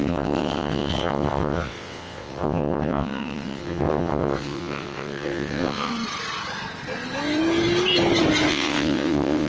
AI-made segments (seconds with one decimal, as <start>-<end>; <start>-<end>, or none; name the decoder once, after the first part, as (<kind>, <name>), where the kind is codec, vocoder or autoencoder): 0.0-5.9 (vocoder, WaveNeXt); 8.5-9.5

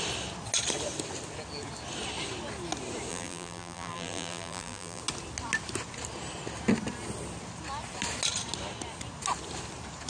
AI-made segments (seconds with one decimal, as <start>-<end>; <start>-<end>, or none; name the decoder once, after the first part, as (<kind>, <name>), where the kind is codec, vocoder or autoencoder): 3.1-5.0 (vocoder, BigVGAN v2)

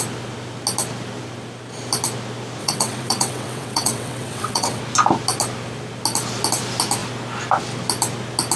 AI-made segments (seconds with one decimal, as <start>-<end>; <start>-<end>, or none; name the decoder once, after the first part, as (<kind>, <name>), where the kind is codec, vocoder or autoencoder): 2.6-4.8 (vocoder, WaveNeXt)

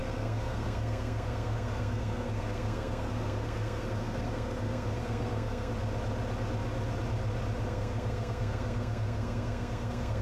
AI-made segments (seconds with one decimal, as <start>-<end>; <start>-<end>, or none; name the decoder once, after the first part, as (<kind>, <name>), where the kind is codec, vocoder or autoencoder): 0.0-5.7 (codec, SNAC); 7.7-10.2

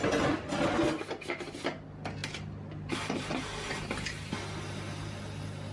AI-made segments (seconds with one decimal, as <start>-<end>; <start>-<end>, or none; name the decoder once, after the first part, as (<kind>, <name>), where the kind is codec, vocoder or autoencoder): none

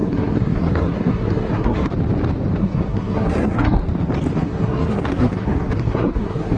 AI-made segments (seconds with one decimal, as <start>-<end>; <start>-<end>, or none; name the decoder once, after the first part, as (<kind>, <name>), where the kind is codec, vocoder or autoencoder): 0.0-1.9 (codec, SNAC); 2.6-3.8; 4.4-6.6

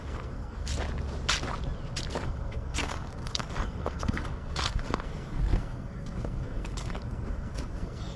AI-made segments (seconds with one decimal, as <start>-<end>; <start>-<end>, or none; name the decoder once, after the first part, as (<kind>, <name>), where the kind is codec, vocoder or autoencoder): 0.0-0.7 (codec, SNAC); 2.1-8.2

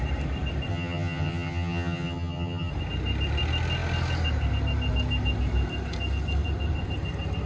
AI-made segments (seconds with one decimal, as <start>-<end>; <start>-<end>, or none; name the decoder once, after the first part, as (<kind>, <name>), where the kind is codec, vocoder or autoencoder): 0.7-2.7 (vocoder, HiFi-GAN)